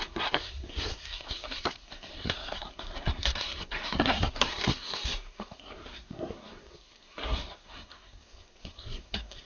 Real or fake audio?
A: fake